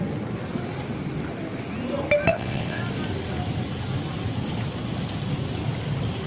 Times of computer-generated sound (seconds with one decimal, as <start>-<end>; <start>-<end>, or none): 2.3-2.8